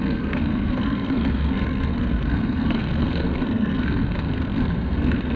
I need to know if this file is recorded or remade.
remade